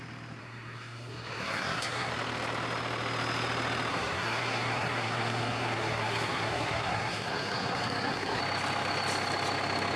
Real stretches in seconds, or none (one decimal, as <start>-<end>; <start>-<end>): 0.0-0.4; 2.1-3.9; 8.4-10.0